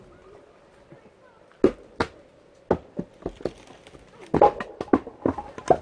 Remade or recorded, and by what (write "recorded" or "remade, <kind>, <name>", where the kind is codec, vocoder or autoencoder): recorded